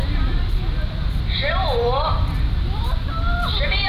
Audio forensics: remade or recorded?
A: remade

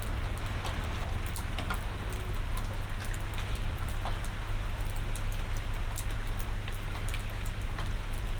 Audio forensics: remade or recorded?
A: recorded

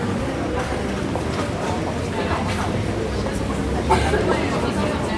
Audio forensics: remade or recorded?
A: recorded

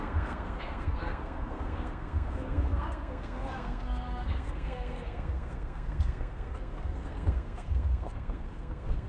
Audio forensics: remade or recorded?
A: remade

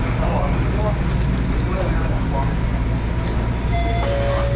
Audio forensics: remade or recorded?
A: recorded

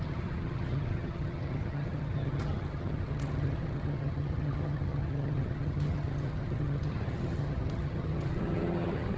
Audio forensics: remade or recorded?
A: remade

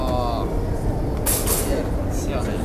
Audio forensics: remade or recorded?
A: recorded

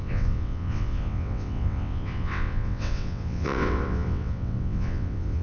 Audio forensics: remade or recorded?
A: remade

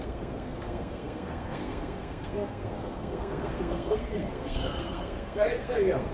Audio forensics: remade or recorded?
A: remade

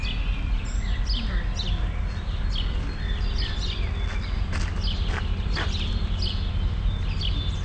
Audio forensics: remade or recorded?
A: recorded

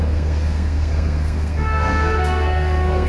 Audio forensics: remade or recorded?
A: remade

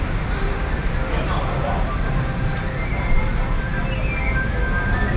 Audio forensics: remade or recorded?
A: remade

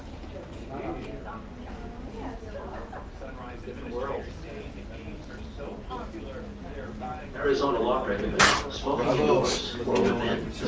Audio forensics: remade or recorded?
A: recorded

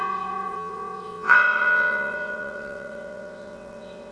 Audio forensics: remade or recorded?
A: remade